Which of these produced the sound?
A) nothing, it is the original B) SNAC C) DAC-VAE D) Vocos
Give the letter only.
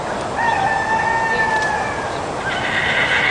A